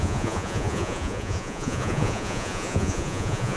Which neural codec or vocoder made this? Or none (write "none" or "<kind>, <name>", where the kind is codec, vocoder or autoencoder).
vocoder, Vocos